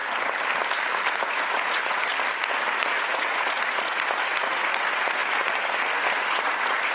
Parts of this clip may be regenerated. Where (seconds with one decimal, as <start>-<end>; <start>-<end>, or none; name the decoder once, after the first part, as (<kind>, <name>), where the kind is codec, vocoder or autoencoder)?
1.1-2.1 (vocoder, Vocos); 2.8-5.2; 6.0-6.9

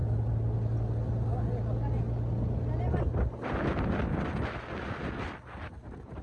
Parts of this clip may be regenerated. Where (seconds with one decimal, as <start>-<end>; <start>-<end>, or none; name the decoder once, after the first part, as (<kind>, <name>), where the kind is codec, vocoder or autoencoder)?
none

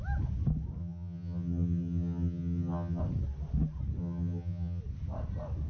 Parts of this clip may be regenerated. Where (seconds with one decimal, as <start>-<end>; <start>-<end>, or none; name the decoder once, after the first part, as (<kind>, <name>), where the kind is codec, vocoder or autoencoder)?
0.8-3.0 (vocoder, HiFi-GAN); 4.0-4.8